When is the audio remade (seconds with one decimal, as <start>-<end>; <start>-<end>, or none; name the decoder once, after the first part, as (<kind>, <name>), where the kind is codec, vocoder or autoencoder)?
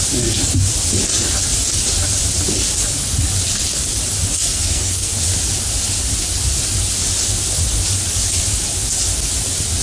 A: 4.3-5.1 (codec, SNAC)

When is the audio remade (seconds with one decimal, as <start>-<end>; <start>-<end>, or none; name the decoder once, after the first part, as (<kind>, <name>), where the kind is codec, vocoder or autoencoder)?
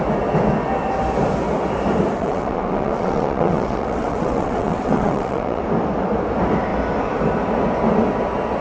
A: 2.2-5.6 (vocoder, WaveNeXt)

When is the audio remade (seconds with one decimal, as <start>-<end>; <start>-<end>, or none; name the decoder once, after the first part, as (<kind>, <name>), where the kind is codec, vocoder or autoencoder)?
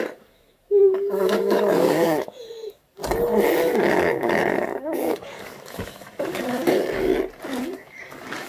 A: 0.0-3.0 (codec, DAC); 3.7-7.1; 7.6-8.5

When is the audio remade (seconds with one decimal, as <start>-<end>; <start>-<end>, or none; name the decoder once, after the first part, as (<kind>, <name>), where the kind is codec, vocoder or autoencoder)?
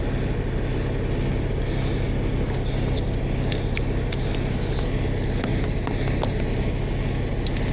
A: none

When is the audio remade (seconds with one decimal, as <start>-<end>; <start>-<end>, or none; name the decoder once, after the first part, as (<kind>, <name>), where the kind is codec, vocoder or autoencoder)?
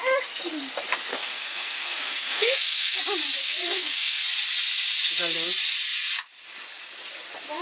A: 1.1-3.0 (codec, SNAC); 3.4-4.2